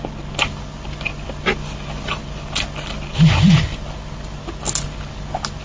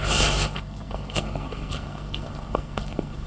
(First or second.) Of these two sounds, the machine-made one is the second